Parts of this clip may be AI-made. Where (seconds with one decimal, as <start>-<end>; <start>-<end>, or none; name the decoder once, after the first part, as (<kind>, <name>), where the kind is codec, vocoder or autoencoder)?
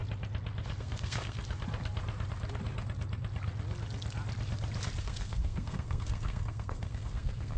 0.8-1.4 (codec, SNAC); 5.0-7.6